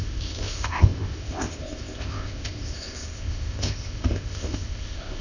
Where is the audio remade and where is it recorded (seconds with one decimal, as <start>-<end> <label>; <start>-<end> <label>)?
0.0-5.2 remade